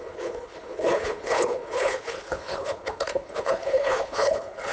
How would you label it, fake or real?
fake